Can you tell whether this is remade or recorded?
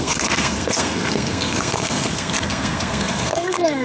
remade